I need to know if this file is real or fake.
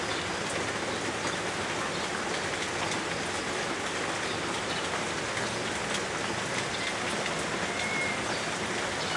real